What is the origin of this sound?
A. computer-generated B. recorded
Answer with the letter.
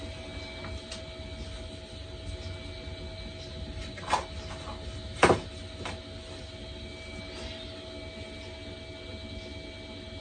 B